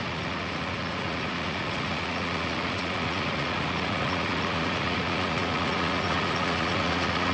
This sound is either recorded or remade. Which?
remade